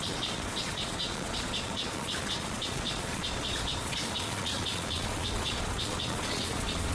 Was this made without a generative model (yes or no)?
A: no